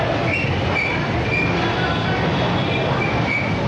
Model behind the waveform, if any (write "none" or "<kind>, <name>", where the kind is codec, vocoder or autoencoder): none